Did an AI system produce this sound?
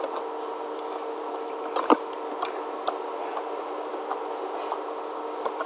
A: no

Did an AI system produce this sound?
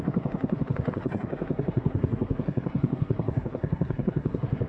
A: yes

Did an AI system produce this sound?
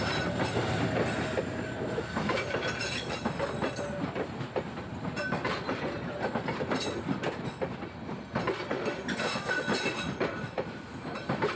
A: no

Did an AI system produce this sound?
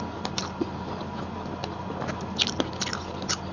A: no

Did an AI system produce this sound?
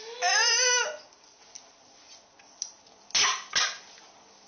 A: no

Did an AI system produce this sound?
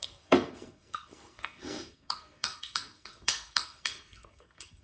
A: yes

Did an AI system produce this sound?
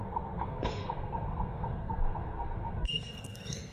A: yes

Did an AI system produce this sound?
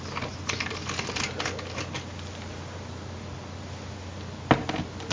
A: no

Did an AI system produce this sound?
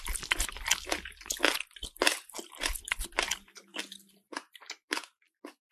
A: no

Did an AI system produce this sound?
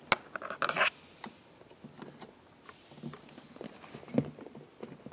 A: no